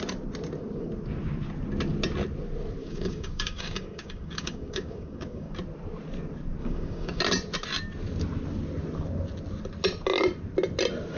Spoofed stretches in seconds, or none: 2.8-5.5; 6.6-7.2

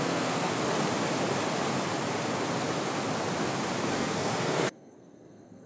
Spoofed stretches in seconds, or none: 0.0-0.5; 3.9-5.7